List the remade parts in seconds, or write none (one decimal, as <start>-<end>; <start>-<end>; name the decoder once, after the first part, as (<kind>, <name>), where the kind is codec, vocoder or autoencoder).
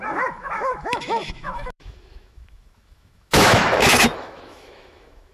0.0-5.3 (autoencoder, DAC-VAE)